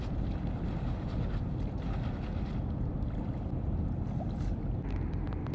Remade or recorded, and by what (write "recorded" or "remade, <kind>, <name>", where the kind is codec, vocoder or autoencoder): recorded